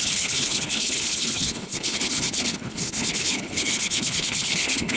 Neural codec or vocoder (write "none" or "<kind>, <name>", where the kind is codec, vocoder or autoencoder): codec, HILCodec